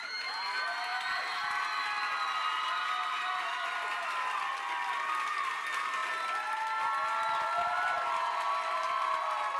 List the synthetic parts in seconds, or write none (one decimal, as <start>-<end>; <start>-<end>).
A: none